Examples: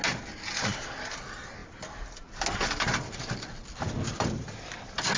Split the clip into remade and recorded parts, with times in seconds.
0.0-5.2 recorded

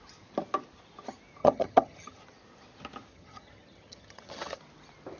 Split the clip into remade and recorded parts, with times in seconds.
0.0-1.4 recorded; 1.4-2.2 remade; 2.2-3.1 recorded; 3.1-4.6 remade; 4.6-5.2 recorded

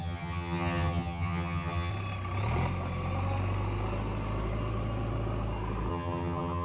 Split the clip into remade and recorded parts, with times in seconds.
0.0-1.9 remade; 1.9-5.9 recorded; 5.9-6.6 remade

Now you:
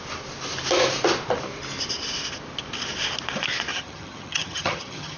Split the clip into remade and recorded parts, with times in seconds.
0.0-3.7 recorded; 3.7-5.2 remade

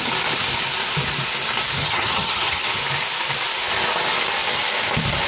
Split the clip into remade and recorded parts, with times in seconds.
0.0-1.8 recorded; 1.8-2.7 remade; 2.7-5.3 recorded